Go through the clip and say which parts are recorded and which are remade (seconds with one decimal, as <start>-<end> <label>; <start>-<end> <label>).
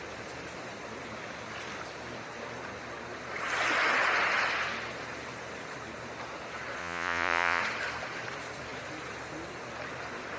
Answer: 0.0-6.8 recorded; 6.8-7.6 remade; 7.6-10.4 recorded